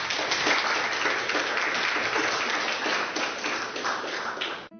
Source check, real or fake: real